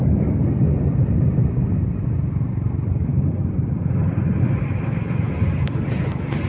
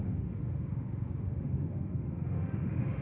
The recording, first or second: first